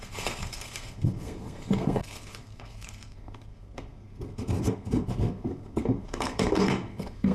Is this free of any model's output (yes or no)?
no